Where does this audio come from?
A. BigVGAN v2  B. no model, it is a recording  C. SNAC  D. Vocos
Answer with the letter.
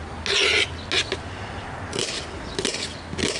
B